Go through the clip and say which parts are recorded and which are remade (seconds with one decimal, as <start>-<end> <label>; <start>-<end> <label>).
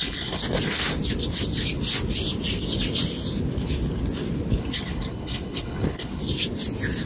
0.0-0.4 remade; 0.4-4.6 recorded; 4.6-6.2 remade; 6.2-7.1 recorded